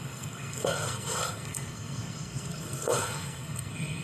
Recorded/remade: remade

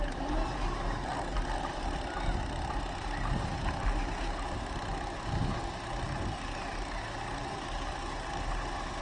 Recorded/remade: recorded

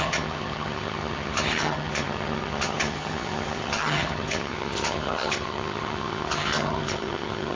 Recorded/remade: remade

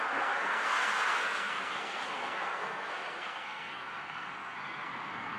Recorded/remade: remade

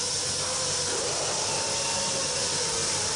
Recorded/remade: recorded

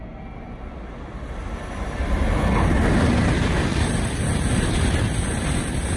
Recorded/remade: recorded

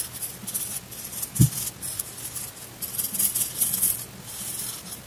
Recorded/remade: recorded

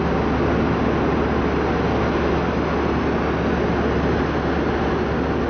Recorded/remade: recorded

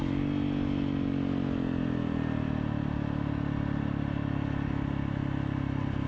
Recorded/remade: recorded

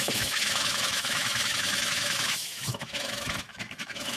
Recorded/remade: remade